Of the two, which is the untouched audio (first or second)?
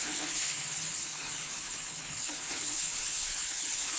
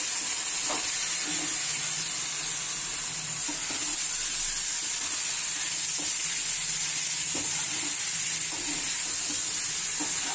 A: second